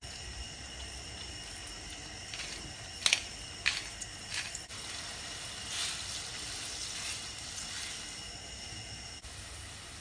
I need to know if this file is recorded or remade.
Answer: recorded